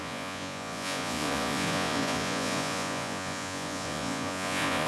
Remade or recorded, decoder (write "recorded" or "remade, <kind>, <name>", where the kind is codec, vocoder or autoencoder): remade, vocoder, Vocos